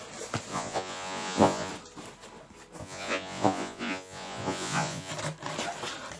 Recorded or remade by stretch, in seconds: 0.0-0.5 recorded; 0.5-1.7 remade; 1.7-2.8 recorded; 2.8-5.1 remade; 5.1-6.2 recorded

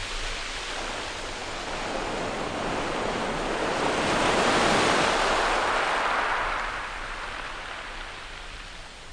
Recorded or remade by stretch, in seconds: 0.0-9.1 recorded

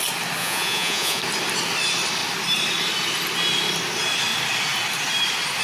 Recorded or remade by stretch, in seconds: 0.0-0.4 recorded; 0.4-1.2 remade; 1.2-5.6 recorded

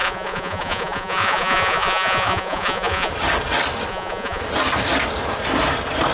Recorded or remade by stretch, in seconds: 0.0-3.1 remade; 3.1-3.9 recorded; 3.9-4.4 remade; 4.4-6.1 recorded

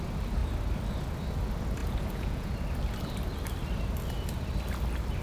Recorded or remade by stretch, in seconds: 0.0-1.8 recorded; 1.8-2.5 remade; 2.5-5.2 recorded

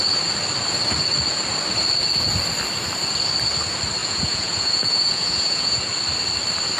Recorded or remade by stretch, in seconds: 0.0-4.0 recorded; 4.0-5.9 remade; 5.9-6.8 recorded

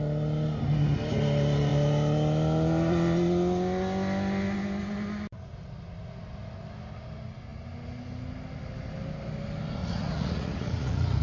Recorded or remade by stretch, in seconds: 0.0-9.8 recorded; 9.8-11.2 remade

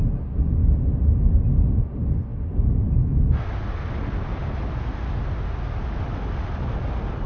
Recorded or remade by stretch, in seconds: 0.0-7.3 recorded